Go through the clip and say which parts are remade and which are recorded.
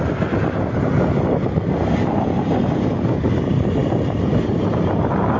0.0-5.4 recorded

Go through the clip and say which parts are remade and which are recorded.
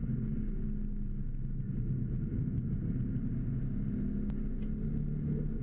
0.0-5.6 recorded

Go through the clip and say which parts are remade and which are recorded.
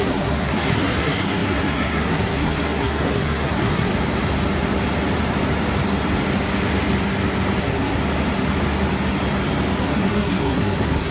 0.0-3.9 remade; 3.9-7.6 recorded; 7.6-8.0 remade; 8.0-9.8 recorded; 9.8-11.1 remade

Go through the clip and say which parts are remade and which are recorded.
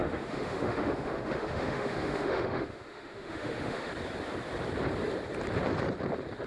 0.0-3.9 remade; 3.9-6.5 recorded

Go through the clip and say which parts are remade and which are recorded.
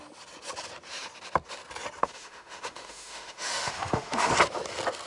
0.0-2.0 recorded; 2.0-4.3 remade; 4.3-5.1 recorded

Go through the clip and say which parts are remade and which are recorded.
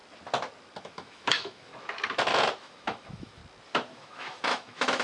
0.0-0.8 recorded; 0.8-1.7 remade; 1.7-2.6 recorded; 2.6-3.4 remade; 3.4-3.9 recorded; 3.9-5.0 remade